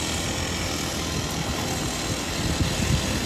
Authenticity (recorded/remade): recorded